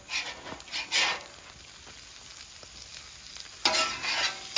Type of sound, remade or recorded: recorded